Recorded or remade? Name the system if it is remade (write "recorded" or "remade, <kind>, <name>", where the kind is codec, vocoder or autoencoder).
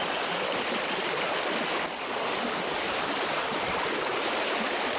recorded